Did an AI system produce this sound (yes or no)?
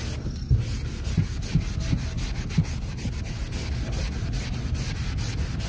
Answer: no